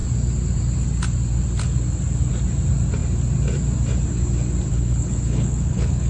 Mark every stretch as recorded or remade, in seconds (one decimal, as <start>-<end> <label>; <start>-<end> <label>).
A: 0.0-4.7 recorded; 4.7-6.1 remade